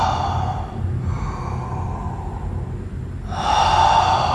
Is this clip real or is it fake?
real